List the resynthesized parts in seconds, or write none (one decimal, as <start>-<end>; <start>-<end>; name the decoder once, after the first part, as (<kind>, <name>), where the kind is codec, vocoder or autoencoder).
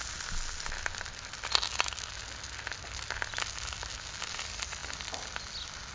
none